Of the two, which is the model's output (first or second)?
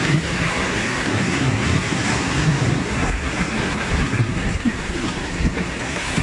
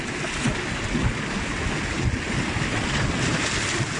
first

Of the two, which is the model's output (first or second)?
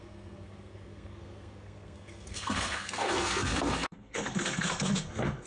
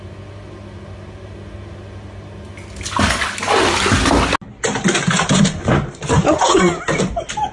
first